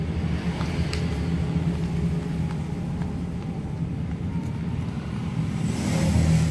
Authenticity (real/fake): real